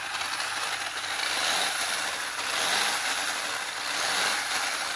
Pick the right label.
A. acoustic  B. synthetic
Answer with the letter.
A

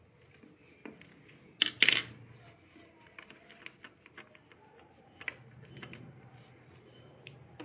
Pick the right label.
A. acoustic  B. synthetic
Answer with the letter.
A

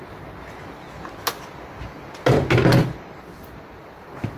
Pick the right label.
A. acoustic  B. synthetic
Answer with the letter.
A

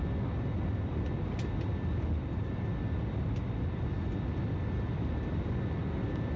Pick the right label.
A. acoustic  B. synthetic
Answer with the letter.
A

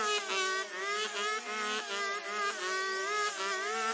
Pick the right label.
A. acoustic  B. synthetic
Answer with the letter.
A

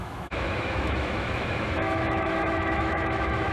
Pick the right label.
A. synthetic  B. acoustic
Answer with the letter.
A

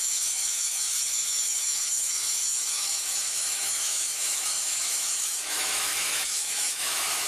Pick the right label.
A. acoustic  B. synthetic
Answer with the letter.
B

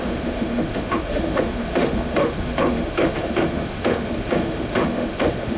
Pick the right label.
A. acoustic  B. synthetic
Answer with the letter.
B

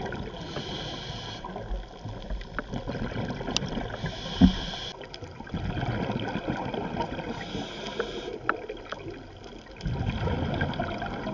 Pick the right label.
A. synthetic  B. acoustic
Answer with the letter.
B